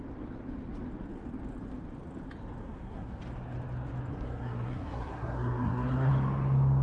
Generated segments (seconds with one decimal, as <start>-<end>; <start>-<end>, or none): 2.6-3.2; 4.1-6.1